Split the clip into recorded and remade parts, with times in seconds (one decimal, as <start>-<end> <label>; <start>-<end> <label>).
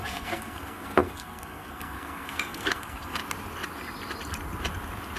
0.0-3.2 remade; 3.2-5.2 recorded